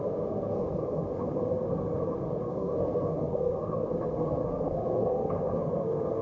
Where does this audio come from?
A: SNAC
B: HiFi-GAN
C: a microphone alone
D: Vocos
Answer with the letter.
A